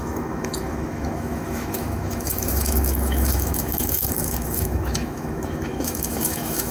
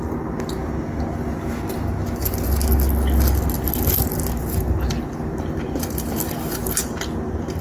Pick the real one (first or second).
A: second